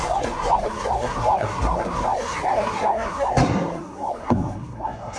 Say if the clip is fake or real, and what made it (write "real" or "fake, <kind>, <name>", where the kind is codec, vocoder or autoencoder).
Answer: fake, codec, SNAC